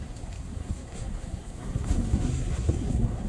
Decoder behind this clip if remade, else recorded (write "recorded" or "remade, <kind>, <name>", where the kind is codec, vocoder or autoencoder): remade, codec, SNAC